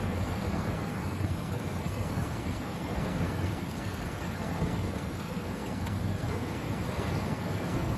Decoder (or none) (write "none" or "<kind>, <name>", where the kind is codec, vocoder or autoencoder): codec, SNAC